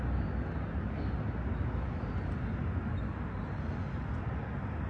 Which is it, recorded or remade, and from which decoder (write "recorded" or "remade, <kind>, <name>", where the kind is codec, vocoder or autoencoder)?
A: recorded